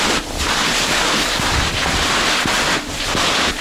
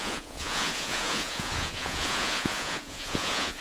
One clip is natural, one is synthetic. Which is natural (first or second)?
first